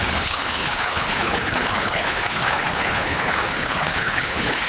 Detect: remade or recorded remade